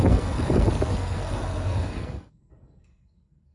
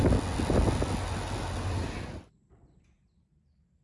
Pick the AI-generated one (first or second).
first